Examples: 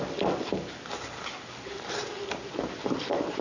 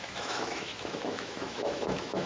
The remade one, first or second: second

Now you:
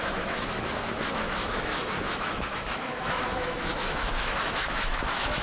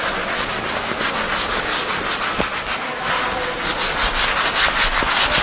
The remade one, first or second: first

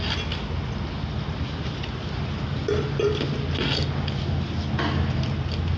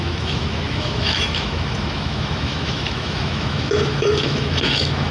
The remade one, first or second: second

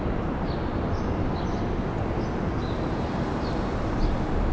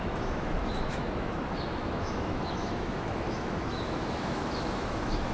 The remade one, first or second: second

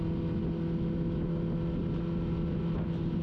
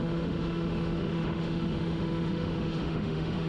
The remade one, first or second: second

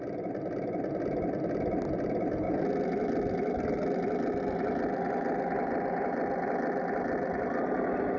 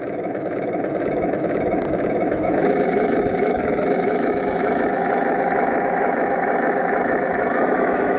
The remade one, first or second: second